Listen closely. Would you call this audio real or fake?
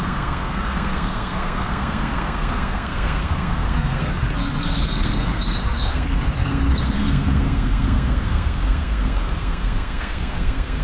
fake